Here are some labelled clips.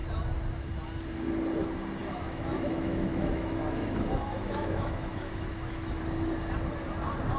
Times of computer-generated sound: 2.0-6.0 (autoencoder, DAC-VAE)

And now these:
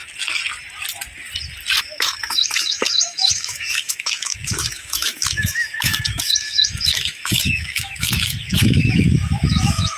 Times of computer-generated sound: 1.8-10.0 (autoencoder, DAC-VAE)

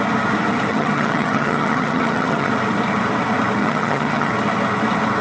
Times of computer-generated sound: 0.7-2.5 (vocoder, HiFi-GAN); 3.6-4.3

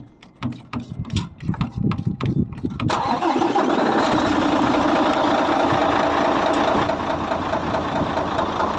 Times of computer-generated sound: 0.0-5.8 (vocoder, BigVGAN v2); 7.1-8.8

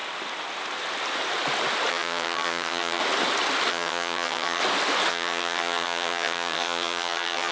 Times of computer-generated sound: 1.9-3.0 (vocoder, HiFi-GAN); 3.7-4.6; 5.1-7.5

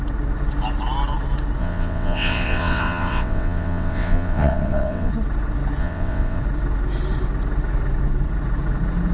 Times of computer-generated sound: 1.6-5.1 (vocoder, WaveNeXt); 5.8-6.4